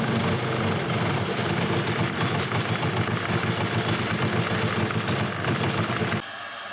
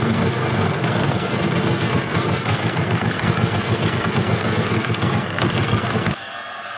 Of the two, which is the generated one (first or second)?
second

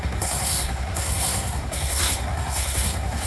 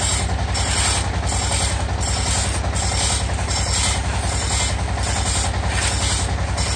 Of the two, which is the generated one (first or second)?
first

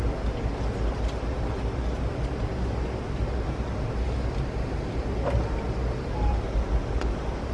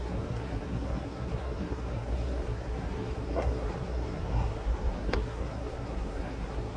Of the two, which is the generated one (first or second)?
second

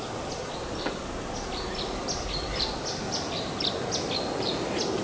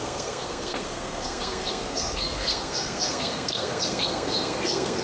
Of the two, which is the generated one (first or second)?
second